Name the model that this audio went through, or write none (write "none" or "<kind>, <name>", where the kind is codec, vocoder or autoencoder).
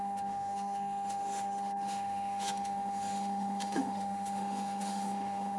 autoencoder, DAC-VAE